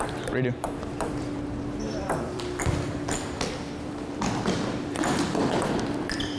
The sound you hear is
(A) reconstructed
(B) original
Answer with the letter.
A